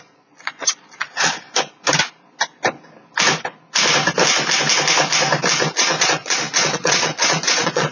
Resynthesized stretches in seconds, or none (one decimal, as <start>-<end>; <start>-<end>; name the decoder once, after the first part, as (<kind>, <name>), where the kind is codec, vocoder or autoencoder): 0.0-1.3 (vocoder, Vocos); 5.7-7.9